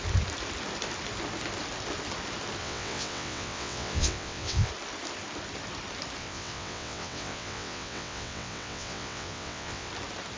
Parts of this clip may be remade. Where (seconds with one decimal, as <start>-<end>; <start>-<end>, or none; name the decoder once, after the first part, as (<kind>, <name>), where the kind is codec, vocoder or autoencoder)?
2.6-4.7 (vocoder, WaveNeXt); 6.2-9.9